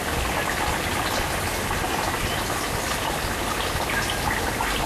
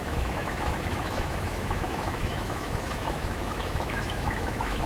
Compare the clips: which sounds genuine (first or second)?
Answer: first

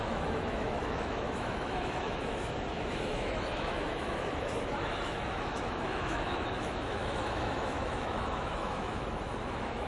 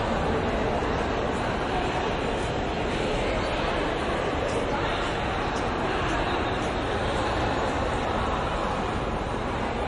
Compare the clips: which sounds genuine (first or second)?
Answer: second